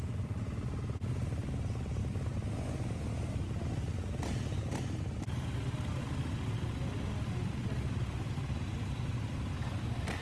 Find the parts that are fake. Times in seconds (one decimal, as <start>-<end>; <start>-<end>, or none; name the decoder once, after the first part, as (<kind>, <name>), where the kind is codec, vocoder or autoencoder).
9.6-10.2 (vocoder, BigVGAN v2)